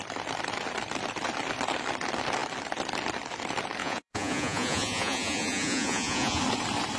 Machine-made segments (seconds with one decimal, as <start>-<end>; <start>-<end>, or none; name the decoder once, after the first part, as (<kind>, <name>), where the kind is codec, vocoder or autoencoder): 3.8-6.4 (vocoder, Vocos)